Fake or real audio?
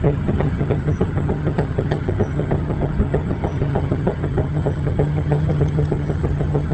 fake